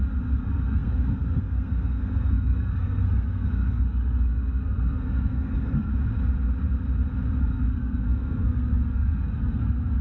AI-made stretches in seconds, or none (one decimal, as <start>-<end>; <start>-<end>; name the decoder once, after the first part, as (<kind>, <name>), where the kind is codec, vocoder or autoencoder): 0.0-5.9 (codec, SNAC); 7.4-10.0